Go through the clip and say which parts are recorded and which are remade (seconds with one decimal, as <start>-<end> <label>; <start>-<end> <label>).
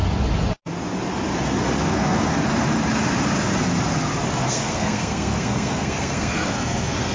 0.0-1.8 recorded; 1.8-2.3 remade; 2.3-4.3 recorded; 4.3-7.1 remade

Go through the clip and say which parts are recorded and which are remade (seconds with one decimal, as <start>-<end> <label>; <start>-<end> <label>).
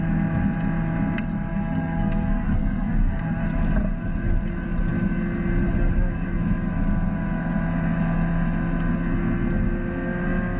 0.0-1.5 recorded; 1.5-3.2 remade; 3.2-10.6 recorded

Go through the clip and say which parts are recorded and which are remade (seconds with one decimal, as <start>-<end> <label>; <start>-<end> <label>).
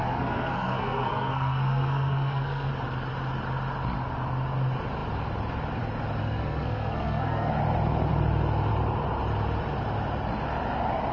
0.0-2.7 remade; 2.7-6.2 recorded; 6.2-7.5 remade; 7.5-11.1 recorded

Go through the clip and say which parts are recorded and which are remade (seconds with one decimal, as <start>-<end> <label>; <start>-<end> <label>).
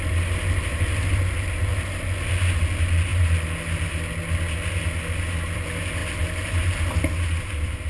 0.0-7.9 recorded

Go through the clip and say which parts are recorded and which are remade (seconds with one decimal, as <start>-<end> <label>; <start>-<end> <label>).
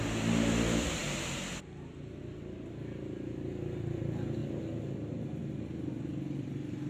0.0-6.9 recorded